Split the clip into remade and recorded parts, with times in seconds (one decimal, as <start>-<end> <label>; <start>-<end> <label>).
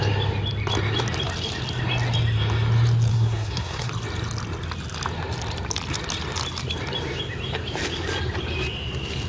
0.0-3.1 recorded; 3.1-3.9 remade; 3.9-9.3 recorded